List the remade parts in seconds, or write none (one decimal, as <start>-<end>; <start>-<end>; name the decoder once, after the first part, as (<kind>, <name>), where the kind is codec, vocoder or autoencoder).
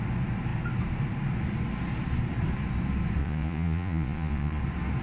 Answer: 3.2-4.6 (vocoder, Vocos)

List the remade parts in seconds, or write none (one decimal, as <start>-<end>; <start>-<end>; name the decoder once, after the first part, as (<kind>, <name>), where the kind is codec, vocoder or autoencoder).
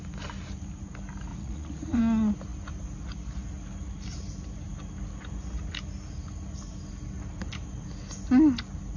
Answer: 1.3-2.0 (vocoder, Vocos)